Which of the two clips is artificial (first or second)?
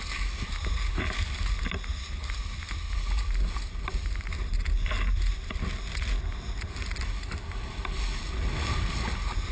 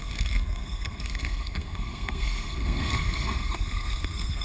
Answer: second